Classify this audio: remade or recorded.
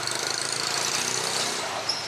recorded